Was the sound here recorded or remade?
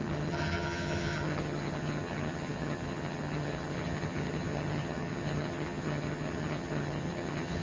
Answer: remade